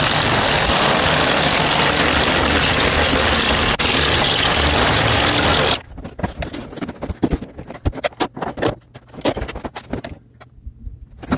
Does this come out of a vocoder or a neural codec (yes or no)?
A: no